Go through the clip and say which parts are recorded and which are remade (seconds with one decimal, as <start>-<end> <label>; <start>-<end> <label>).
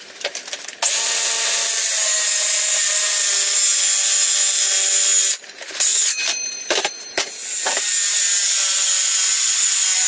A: 0.0-10.1 recorded